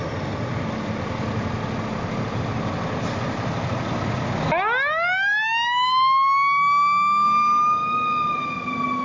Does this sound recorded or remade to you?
recorded